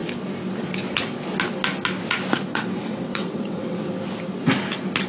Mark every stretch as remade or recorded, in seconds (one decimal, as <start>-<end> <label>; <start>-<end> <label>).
0.0-2.5 recorded; 2.5-3.9 remade; 3.9-5.1 recorded